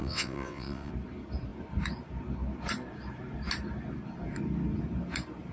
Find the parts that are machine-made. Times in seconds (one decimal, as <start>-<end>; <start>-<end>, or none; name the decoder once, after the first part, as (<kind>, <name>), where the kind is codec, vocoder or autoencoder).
0.0-0.9 (vocoder, WaveNeXt)